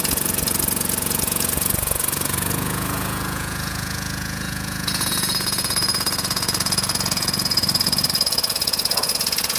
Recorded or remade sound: remade